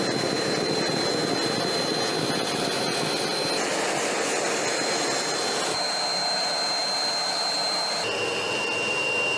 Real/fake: real